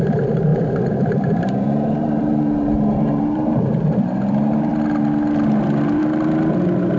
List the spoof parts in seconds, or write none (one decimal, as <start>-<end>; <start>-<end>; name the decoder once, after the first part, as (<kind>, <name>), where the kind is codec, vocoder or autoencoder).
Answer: 0.5-3.7 (vocoder, BigVGAN v2)